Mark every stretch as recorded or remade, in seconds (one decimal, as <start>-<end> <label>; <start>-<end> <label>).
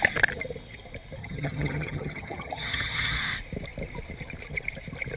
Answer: 0.0-1.2 recorded; 1.2-3.2 remade; 3.2-5.2 recorded